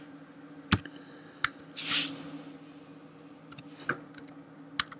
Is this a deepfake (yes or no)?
no